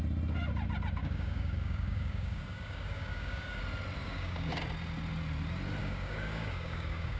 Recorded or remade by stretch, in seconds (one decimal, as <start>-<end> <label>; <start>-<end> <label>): 0.0-1.0 recorded; 1.0-3.6 remade; 3.6-4.0 recorded; 4.0-4.6 remade; 4.6-5.8 recorded; 5.8-7.2 remade